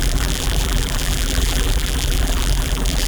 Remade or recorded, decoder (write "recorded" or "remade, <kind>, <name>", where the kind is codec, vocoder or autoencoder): remade, vocoder, BigVGAN v2